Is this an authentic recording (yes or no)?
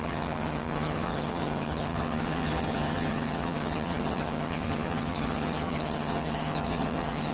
no